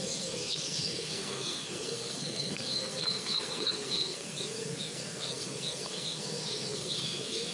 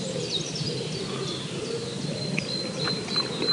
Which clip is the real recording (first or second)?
second